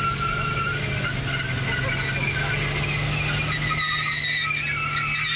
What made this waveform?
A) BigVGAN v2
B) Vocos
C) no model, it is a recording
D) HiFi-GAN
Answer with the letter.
C